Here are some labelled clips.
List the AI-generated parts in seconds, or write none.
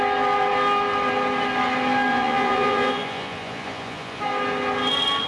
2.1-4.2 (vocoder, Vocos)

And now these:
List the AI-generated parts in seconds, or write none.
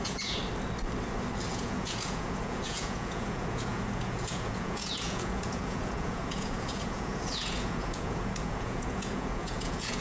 0.0-0.4 (vocoder, Vocos); 1.5-10.0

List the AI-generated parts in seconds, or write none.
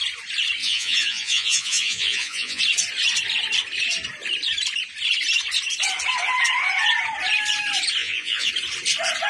0.6-2.6 (vocoder, Vocos); 8.0-8.5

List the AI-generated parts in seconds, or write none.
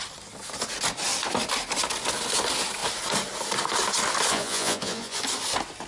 4.3-5.2 (vocoder, Vocos)